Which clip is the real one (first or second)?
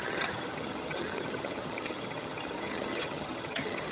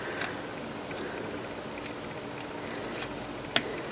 second